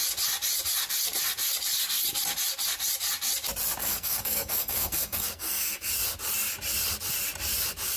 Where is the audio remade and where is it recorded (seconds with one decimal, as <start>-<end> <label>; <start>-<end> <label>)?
0.0-3.8 recorded; 3.8-5.9 remade; 5.9-8.0 recorded